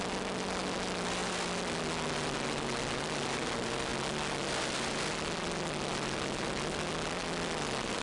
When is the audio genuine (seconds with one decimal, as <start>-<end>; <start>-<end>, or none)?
0.0-8.0